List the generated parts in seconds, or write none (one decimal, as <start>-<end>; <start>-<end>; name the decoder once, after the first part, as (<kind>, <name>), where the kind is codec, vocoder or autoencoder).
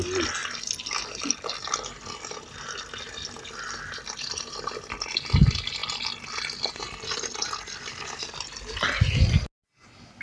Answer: none